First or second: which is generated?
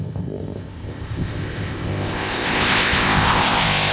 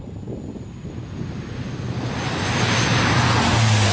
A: first